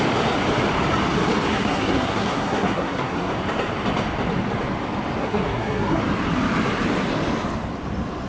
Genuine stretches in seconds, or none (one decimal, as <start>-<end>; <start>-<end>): 0.0-1.5; 3.3-5.2; 6.0-8.3